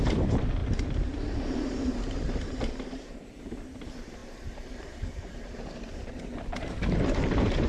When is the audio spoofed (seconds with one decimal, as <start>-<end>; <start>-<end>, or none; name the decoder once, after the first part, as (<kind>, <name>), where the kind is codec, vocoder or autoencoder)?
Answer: 0.0-7.7 (vocoder, BigVGAN v2)